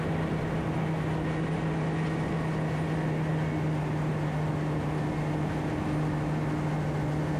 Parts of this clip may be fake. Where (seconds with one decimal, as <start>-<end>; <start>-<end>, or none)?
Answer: none